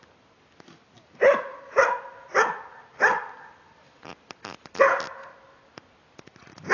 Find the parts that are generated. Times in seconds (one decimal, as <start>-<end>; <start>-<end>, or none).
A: 1.5-4.8